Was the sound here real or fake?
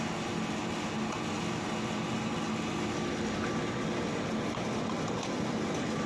real